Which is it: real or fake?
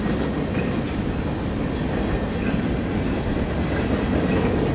real